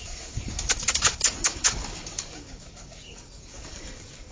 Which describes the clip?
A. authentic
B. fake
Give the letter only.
B